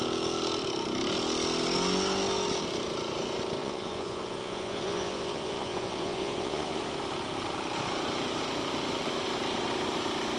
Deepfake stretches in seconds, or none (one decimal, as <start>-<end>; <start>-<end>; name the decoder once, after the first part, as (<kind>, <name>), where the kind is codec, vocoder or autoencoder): 3.6-6.8 (vocoder, Vocos)